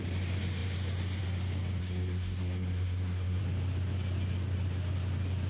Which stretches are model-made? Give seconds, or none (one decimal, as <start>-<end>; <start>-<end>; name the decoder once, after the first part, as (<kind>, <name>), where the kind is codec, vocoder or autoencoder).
1.8-3.4 (codec, SNAC)